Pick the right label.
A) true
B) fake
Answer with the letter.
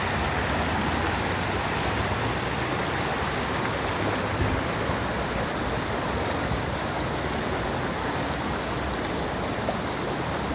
A